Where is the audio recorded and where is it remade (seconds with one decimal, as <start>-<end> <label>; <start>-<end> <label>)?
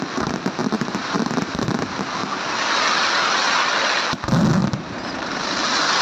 0.0-0.6 recorded; 0.6-1.6 remade; 1.6-4.6 recorded; 4.6-5.4 remade; 5.4-6.0 recorded